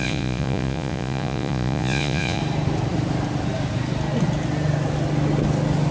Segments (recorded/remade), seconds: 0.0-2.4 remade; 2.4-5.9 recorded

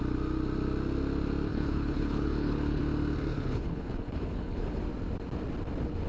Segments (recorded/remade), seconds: 0.0-1.5 recorded; 1.5-2.8 remade; 2.8-3.3 recorded; 3.3-4.8 remade; 4.8-6.1 recorded

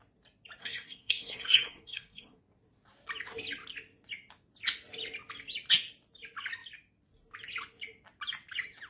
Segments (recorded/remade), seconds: 0.0-0.6 recorded; 0.6-2.4 remade; 2.4-8.9 recorded

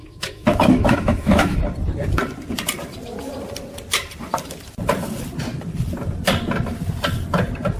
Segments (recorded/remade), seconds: 0.0-1.6 remade; 1.6-7.8 recorded